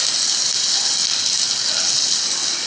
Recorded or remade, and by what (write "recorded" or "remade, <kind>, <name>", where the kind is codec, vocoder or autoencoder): recorded